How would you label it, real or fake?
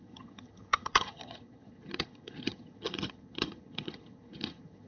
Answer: fake